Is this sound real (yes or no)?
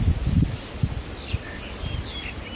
yes